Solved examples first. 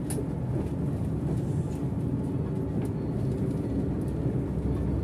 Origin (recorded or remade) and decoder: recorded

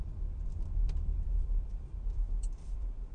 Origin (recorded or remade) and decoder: remade, vocoder, BigVGAN v2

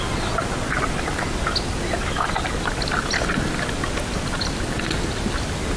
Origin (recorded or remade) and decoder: recorded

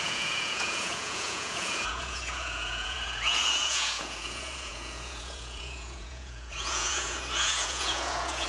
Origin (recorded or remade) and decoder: remade, vocoder, Vocos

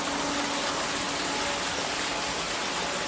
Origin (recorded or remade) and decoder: recorded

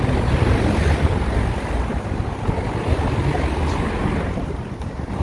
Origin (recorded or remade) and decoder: recorded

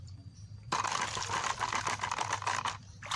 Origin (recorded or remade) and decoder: recorded